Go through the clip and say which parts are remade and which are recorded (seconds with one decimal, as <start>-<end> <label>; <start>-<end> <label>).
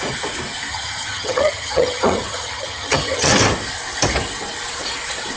0.0-0.7 recorded; 0.7-3.3 remade; 3.3-5.4 recorded